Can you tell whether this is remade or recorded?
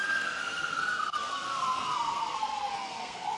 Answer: remade